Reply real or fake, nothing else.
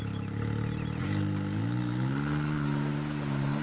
real